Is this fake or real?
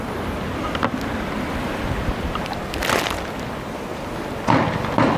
real